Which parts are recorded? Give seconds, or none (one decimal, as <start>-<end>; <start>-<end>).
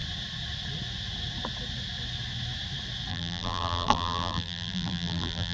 0.0-3.1